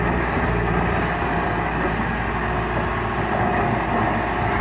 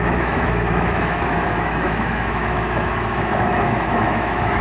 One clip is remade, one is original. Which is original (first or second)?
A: first